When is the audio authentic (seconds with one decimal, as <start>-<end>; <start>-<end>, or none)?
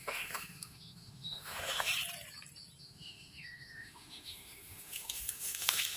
1.9-2.8